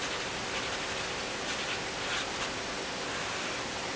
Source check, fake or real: real